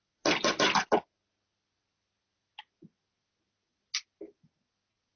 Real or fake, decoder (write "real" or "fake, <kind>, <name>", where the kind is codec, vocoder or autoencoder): real